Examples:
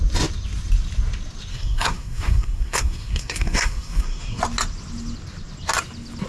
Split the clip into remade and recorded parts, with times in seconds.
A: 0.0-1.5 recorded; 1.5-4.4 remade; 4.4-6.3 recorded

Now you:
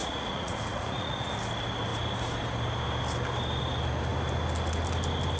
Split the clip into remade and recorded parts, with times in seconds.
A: 0.0-1.3 remade; 1.3-5.4 recorded

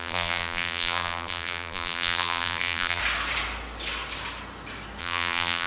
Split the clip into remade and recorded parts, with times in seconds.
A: 0.0-3.0 remade; 3.0-5.0 recorded; 5.0-5.7 remade

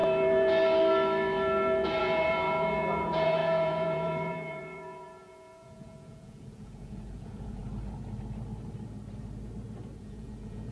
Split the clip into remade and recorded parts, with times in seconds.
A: 0.0-2.0 recorded; 2.0-7.6 remade; 7.6-10.0 recorded; 10.0-10.7 remade

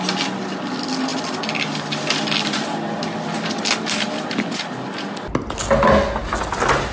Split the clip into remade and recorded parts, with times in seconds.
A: 0.0-6.9 recorded

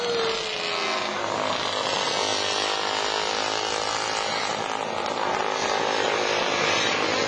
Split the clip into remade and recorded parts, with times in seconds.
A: 0.0-7.3 recorded